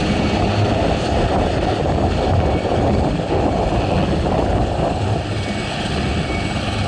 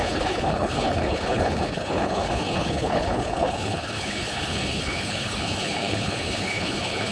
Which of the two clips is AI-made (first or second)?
second